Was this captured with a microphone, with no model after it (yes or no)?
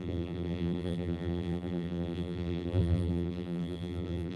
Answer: no